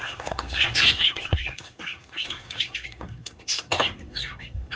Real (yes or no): no